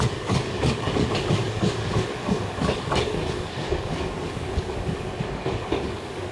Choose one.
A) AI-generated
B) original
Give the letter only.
A